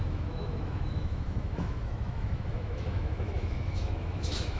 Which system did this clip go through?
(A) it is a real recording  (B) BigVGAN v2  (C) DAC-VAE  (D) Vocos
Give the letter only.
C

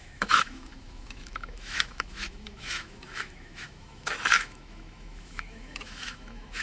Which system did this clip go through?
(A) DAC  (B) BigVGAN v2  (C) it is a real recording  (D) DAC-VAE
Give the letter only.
D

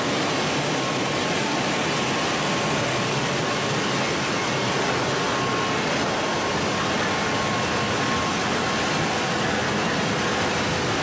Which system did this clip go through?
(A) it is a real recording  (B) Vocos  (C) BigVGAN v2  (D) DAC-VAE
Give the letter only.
A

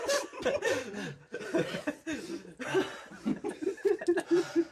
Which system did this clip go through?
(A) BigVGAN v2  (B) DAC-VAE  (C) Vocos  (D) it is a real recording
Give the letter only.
D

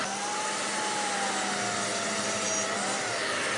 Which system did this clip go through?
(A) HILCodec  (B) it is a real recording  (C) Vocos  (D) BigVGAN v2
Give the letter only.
B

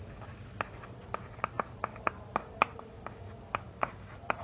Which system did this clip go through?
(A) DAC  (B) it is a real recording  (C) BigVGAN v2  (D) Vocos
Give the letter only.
B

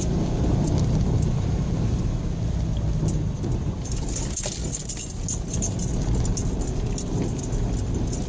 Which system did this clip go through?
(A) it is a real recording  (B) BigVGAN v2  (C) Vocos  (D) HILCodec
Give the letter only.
A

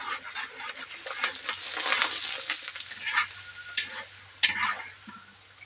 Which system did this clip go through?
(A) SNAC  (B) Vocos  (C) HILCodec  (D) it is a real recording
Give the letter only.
D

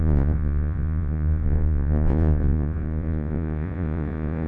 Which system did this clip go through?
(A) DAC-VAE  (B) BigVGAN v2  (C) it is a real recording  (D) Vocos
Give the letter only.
D